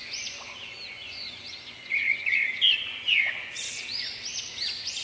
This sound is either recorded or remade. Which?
remade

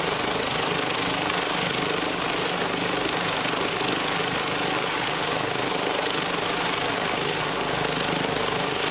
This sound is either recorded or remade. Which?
recorded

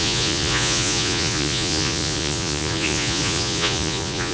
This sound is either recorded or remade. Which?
remade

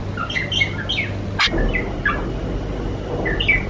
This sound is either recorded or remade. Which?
recorded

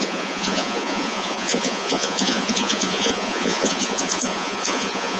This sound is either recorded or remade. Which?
remade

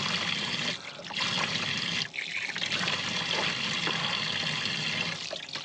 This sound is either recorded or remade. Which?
recorded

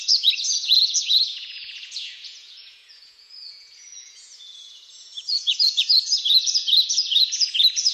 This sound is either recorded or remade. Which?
remade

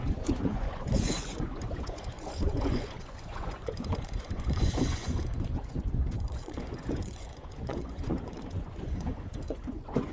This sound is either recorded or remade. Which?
remade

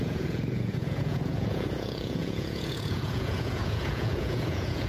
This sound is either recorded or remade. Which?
remade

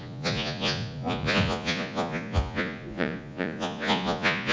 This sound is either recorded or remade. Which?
remade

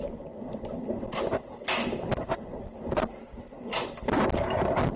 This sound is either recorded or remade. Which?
recorded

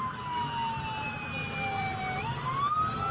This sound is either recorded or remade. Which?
recorded